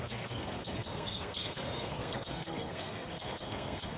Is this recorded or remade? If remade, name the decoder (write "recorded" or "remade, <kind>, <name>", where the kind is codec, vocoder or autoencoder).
remade, codec, SNAC